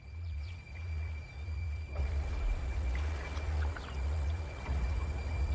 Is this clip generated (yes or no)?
yes